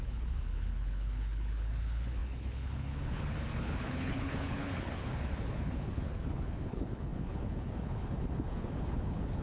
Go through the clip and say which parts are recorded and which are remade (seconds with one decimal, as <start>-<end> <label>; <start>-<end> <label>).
0.0-9.4 remade